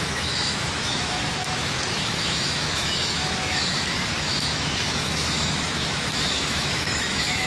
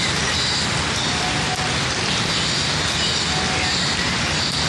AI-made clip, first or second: first